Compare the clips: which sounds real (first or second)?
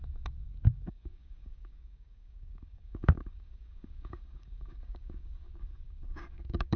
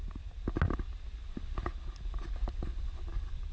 second